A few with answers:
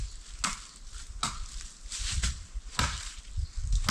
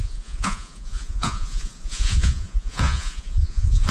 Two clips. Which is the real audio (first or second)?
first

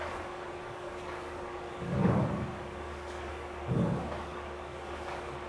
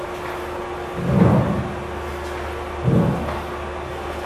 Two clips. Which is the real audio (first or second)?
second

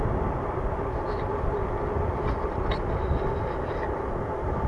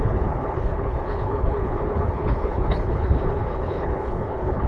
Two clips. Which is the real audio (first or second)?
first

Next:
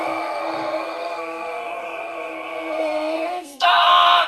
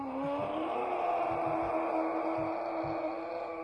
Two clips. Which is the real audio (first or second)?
second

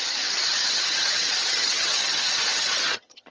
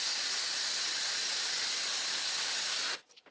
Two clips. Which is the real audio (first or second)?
second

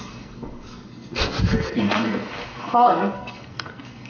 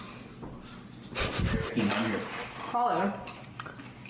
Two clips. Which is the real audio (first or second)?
second